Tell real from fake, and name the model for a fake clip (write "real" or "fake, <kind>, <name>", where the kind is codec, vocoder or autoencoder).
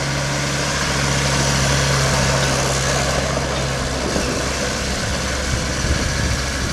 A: real